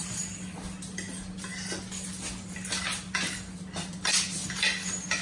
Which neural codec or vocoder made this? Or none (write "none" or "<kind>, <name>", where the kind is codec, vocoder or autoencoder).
none